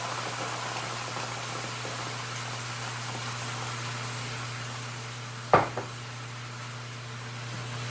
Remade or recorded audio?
recorded